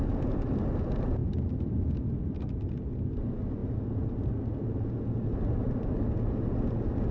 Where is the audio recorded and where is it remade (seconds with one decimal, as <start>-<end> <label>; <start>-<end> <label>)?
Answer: 0.0-7.1 recorded

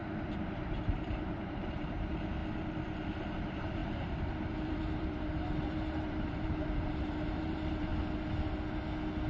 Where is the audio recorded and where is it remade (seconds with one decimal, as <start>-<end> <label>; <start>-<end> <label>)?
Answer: 0.0-0.8 recorded; 0.8-2.4 remade; 2.4-3.4 recorded; 3.4-7.9 remade; 7.9-9.3 recorded

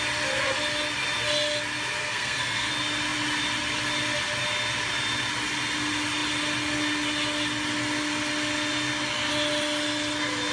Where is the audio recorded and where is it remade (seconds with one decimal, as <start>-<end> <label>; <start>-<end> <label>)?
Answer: 0.0-2.0 recorded; 2.0-2.7 remade; 2.7-10.5 recorded

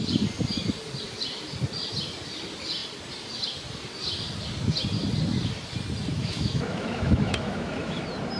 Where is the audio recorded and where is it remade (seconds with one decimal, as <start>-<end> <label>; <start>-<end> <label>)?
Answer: 0.0-6.1 recorded; 6.1-8.0 remade; 8.0-8.4 recorded